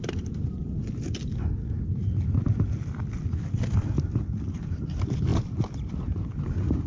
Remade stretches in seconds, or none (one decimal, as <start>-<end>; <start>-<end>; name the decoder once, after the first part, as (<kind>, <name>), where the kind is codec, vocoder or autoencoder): 0.0-0.6 (vocoder, BigVGAN v2); 4.5-5.3; 5.9-6.9